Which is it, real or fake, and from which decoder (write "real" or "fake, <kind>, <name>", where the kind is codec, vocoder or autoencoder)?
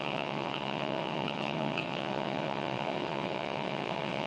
fake, vocoder, WaveNeXt